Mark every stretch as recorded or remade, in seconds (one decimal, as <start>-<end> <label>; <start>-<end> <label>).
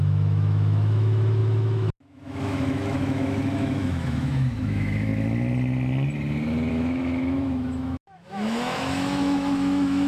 0.0-5.1 remade; 5.1-6.7 recorded; 6.7-10.1 remade